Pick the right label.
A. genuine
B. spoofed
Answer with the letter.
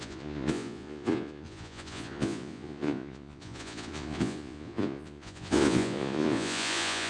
B